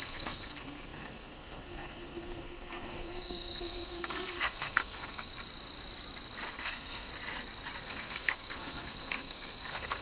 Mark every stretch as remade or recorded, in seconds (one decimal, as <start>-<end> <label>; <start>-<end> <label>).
0.0-5.3 remade; 5.3-6.5 recorded; 6.5-7.1 remade; 7.1-7.8 recorded; 7.8-10.0 remade